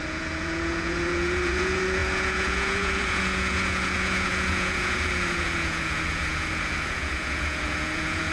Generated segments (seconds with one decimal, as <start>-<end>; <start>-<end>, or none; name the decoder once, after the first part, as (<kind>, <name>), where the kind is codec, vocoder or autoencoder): 0.0-8.3 (vocoder, Vocos)